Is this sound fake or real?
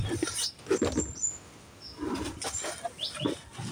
real